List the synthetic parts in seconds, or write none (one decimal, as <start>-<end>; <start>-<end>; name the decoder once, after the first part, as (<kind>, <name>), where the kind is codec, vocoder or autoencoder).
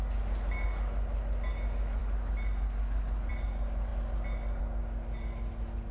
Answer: none